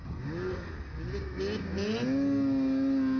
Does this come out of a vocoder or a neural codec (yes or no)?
no